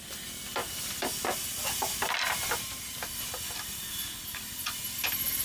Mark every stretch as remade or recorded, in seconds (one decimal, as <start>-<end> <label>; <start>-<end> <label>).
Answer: 0.0-5.4 recorded